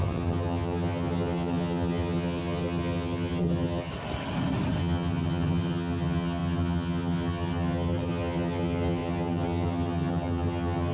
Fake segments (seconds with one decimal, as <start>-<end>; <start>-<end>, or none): 0.0-3.9; 4.8-10.9